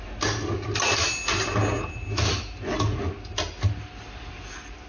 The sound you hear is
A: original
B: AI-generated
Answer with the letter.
A